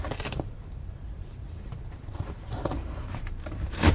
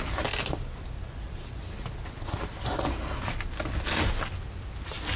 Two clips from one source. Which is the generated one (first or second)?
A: first